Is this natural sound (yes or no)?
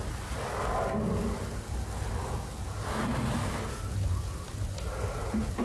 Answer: yes